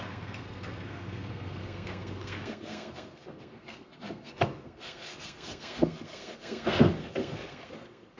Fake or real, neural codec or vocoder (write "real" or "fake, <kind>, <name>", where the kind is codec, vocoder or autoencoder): fake, codec, SNAC